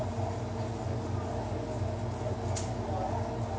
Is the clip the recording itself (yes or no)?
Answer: yes